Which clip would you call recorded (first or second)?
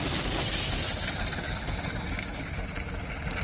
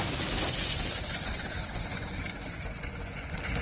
first